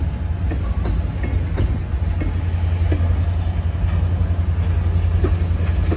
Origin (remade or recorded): recorded